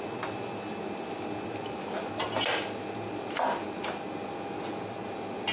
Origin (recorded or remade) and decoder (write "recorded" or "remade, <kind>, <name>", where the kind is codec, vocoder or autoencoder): recorded